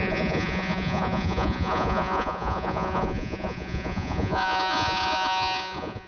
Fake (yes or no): yes